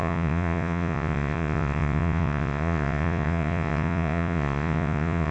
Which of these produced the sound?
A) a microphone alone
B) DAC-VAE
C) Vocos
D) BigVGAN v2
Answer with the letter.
C